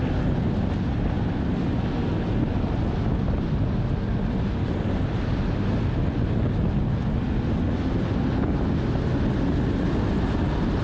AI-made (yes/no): no